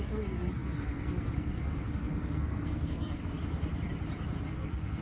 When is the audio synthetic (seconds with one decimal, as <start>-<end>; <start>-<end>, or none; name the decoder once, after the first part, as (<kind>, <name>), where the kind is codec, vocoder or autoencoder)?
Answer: 0.0-3.2 (codec, SNAC); 4.5-5.0